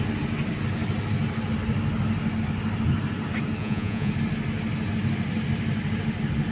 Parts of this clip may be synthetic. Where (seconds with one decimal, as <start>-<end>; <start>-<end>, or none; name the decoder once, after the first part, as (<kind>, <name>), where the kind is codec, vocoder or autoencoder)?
3.6-4.1 (vocoder, Vocos)